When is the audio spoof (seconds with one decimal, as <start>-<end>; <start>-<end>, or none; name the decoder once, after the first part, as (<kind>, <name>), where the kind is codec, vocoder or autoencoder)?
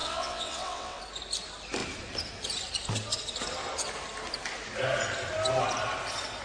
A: 0.0-1.0 (vocoder, WaveNeXt)